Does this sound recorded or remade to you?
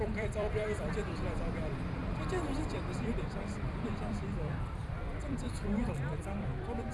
remade